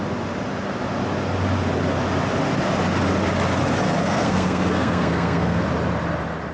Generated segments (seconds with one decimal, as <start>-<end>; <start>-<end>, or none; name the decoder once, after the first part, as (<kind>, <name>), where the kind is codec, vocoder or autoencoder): 4.0-5.6 (codec, SNAC)